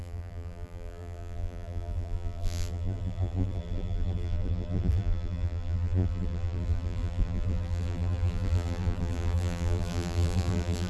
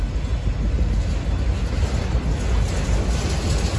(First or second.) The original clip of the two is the second